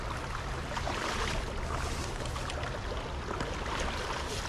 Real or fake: real